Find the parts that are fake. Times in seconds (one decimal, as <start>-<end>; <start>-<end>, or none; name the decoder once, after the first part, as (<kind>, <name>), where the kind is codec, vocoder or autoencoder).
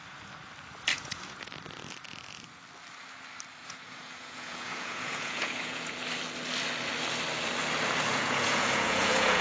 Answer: 0.9-1.5 (vocoder, Vocos); 3.6-5.9; 8.1-9.4